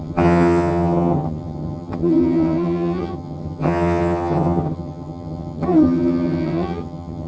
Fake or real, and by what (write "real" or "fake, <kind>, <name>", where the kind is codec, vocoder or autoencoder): fake, vocoder, HiFi-GAN